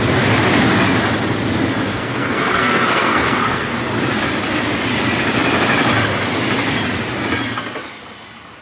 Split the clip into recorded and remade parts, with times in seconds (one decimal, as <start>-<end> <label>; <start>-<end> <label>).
0.0-1.9 recorded; 1.9-3.8 remade; 3.8-8.6 recorded

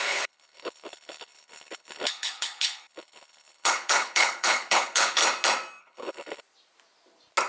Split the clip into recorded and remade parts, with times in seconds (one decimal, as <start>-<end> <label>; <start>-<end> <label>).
0.0-5.2 remade; 5.2-5.8 recorded; 5.8-6.4 remade; 6.4-7.5 recorded

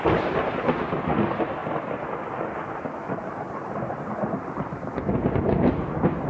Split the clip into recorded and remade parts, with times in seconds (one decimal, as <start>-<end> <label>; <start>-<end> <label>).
0.0-6.3 recorded

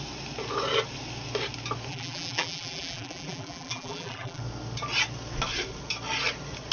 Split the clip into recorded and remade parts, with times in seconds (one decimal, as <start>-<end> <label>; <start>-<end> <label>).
0.0-1.9 recorded; 1.9-4.4 remade; 4.4-6.7 recorded